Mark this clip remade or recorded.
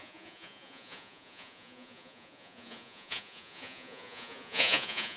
remade